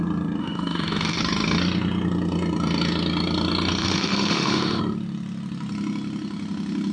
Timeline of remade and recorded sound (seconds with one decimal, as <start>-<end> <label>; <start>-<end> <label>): 0.0-0.4 recorded; 0.4-1.2 remade; 1.2-3.8 recorded; 3.8-4.8 remade; 4.8-6.9 recorded